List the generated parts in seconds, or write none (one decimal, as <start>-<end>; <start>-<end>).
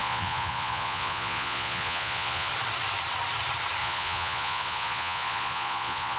0.0-2.5; 3.8-6.2